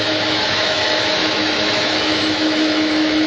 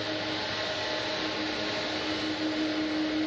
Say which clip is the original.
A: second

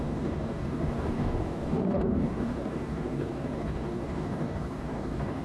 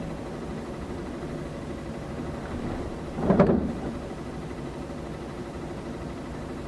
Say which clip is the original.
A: second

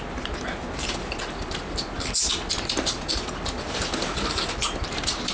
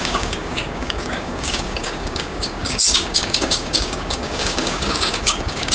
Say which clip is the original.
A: first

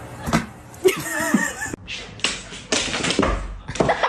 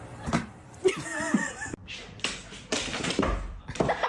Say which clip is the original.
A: first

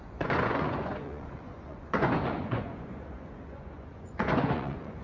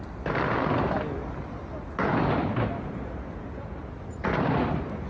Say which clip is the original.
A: second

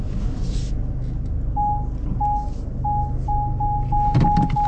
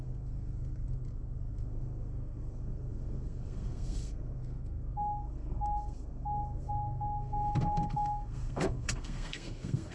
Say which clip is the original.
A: first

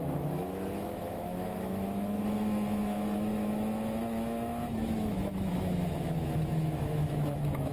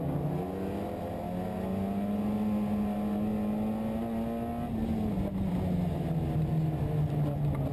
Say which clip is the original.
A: second